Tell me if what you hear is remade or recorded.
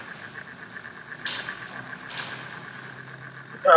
recorded